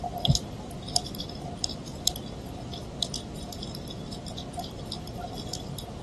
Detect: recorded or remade recorded